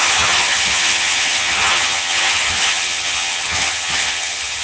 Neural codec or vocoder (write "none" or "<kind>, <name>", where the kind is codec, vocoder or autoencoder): vocoder, HiFi-GAN